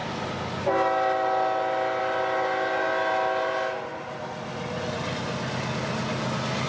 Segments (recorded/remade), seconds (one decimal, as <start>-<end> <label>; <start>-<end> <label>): 0.0-6.7 recorded